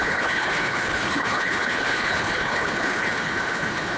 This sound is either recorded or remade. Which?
remade